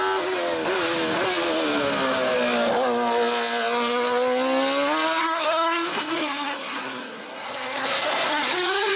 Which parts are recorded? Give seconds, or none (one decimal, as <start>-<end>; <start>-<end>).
0.0-5.2

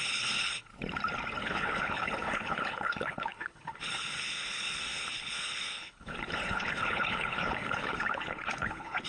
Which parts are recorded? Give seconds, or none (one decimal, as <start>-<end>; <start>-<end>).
0.7-1.4

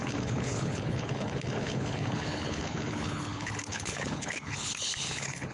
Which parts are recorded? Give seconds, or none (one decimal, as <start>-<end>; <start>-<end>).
none